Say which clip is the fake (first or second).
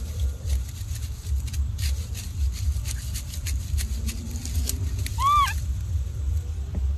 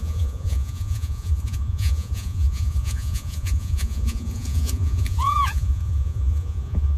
second